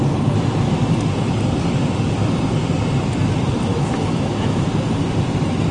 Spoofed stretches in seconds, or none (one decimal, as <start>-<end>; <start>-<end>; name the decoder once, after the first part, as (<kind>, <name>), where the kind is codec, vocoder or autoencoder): 3.7-4.7 (autoencoder, DAC-VAE)